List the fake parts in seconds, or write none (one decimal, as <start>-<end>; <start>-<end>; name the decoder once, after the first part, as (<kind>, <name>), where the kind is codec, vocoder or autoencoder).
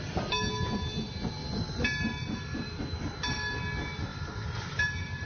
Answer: 1.4-2.8 (vocoder, BigVGAN v2); 4.1-5.3